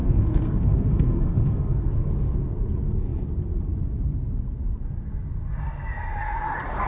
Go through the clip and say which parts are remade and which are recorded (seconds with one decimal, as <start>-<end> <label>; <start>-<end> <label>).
0.0-1.9 remade; 1.9-6.9 recorded